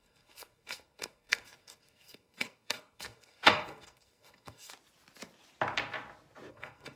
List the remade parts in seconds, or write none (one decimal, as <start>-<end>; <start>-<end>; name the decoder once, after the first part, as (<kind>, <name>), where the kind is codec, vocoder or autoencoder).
0.0-4.7 (codec, SNAC); 6.5-7.0